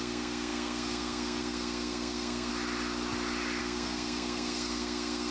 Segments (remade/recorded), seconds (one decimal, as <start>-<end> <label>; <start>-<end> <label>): 0.0-2.5 remade; 2.5-3.6 recorded; 3.6-5.3 remade